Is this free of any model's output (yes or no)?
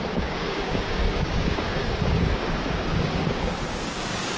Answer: no